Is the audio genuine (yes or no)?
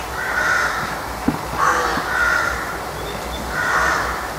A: yes